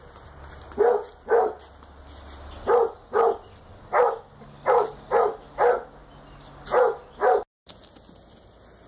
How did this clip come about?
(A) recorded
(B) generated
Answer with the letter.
A